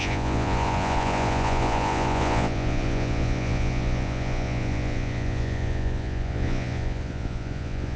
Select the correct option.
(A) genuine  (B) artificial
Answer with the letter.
B